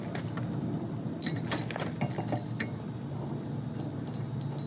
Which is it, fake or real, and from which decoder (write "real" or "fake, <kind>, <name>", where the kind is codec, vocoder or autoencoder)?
real